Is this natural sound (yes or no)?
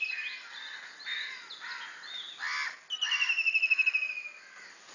yes